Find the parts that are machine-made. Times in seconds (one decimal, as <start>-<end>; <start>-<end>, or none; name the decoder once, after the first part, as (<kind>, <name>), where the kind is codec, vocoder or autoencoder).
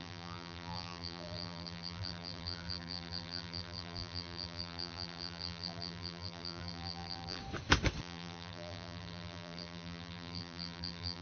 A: 0.0-7.4 (vocoder, BigVGAN v2); 8.0-11.2